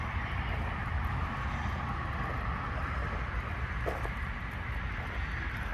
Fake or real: real